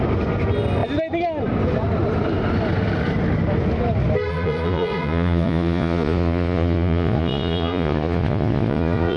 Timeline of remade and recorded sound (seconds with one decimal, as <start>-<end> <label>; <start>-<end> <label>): 0.0-4.3 recorded; 4.3-9.2 remade